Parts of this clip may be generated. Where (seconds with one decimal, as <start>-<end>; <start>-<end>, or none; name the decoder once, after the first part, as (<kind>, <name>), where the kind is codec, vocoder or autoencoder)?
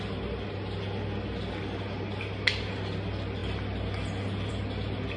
none